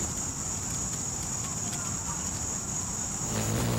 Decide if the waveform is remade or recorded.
recorded